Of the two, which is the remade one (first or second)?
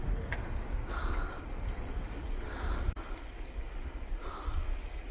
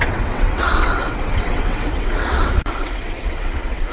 second